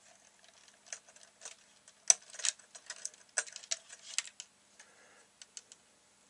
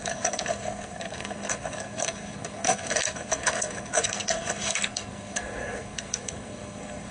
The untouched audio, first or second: first